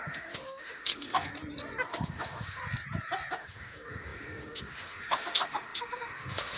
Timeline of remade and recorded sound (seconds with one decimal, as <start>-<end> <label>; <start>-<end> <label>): 0.0-1.3 remade; 1.3-1.9 recorded; 1.9-2.6 remade; 2.6-3.3 recorded; 3.3-6.6 remade